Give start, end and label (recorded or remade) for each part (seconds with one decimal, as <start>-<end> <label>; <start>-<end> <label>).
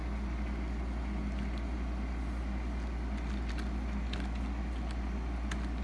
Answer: 0.0-5.8 recorded